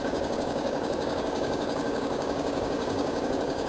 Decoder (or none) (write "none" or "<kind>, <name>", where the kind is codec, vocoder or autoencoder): codec, DAC